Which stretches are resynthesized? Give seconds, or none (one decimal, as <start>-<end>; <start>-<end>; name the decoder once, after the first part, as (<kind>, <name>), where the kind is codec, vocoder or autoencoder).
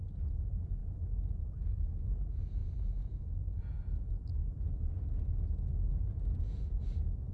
0.0-0.8 (vocoder, Vocos); 1.6-7.3